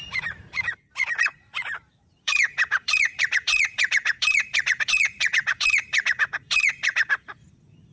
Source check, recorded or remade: remade